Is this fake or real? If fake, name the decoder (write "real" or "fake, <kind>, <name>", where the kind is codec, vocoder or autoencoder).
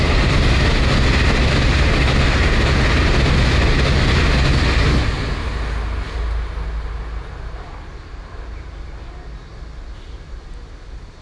real